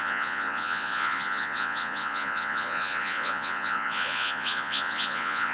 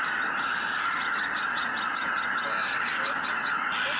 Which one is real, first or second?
second